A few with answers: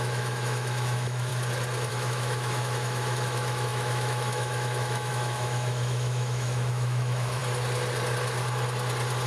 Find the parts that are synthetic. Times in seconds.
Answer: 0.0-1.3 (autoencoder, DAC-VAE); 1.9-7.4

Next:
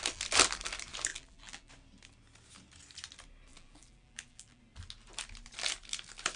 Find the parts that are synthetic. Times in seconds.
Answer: 1.1-1.7 (vocoder, BigVGAN v2); 3.5-4.6

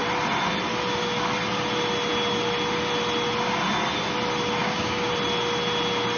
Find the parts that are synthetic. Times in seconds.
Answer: 4.6-5.1 (codec, DAC)

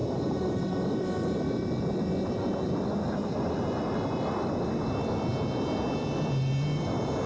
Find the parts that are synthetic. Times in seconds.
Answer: none

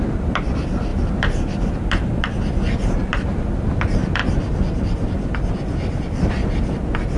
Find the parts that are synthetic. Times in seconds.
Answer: none

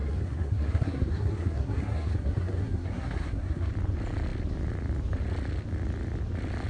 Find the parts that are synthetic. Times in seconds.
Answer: 0.0-3.7 (codec, SNAC)